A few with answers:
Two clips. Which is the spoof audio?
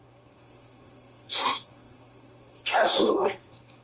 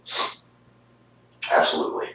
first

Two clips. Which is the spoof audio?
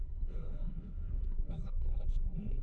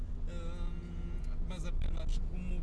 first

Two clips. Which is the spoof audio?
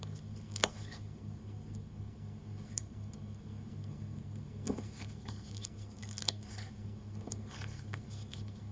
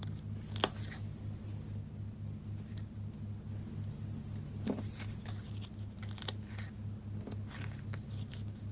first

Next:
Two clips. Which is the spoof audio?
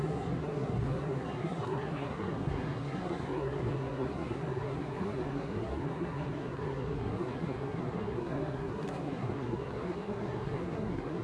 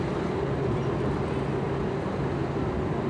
first